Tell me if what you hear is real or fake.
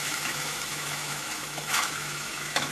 fake